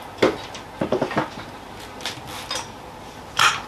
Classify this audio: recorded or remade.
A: recorded